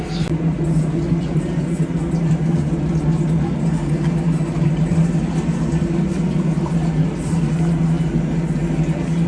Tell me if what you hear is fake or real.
real